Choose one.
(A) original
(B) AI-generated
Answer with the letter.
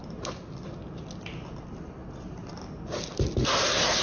A